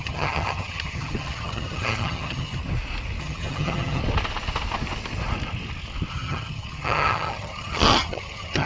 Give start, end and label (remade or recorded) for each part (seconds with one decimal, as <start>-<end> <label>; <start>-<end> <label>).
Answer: 0.0-2.6 remade; 2.6-3.2 recorded; 3.2-4.0 remade; 4.0-6.1 recorded; 6.1-8.7 remade